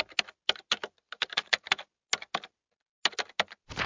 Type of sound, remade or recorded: recorded